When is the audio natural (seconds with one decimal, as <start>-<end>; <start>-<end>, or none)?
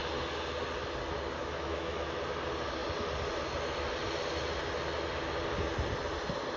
0.0-1.4; 2.2-6.6